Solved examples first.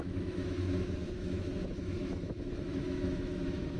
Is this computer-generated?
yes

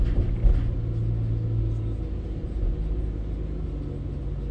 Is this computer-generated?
no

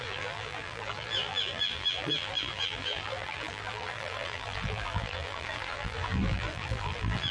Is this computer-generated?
yes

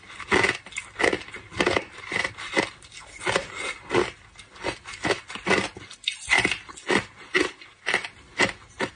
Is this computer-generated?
no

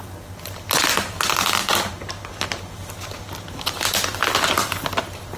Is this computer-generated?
no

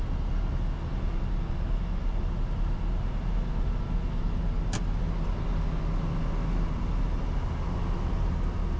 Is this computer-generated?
no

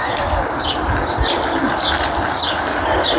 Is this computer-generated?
no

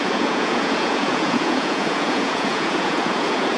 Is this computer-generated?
yes